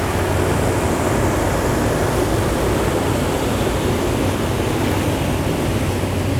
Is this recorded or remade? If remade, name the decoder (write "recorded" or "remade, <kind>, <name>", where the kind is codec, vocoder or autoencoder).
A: recorded